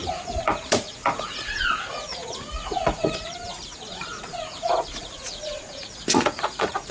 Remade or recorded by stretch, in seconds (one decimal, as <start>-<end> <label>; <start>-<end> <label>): 0.0-6.9 remade